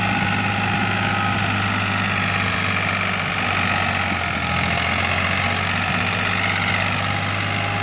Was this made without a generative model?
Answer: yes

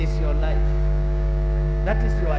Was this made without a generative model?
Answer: no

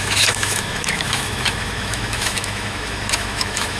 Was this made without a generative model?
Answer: no